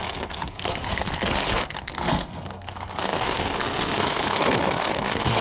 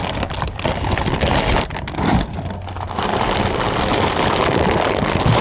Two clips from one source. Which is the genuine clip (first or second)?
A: second